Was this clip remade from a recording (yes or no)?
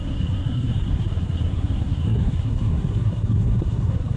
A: yes